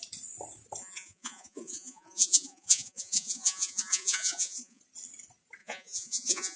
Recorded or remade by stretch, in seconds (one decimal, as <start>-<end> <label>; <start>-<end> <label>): 0.0-0.8 recorded; 0.8-4.8 remade; 4.8-5.6 recorded; 5.6-6.6 remade